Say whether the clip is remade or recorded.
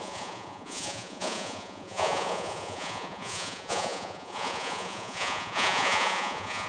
remade